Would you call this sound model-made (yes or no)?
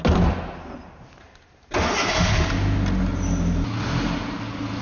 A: no